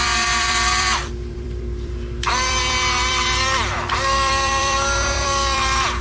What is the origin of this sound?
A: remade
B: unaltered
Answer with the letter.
A